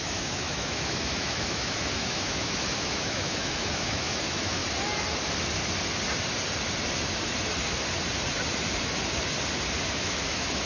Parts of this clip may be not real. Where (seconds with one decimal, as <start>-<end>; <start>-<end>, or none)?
0.0-4.6; 9.9-10.7